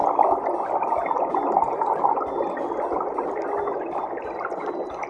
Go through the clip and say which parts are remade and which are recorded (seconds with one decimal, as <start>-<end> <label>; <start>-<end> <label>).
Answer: 0.0-5.1 recorded